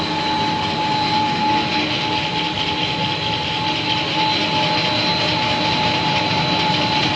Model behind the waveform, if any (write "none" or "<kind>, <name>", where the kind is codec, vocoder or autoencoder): none